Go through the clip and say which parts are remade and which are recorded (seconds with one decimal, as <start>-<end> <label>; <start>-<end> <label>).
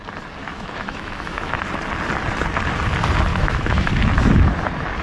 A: 0.0-0.4 recorded; 0.4-1.6 remade; 1.6-3.3 recorded; 3.3-3.9 remade; 3.9-5.0 recorded